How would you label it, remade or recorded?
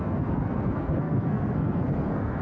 remade